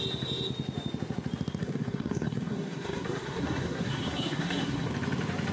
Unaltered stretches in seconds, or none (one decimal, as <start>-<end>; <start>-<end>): 0.0-1.6; 4.9-5.5